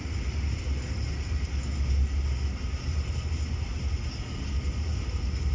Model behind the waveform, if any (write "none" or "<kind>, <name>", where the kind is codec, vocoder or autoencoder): none